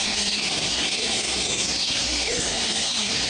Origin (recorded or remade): remade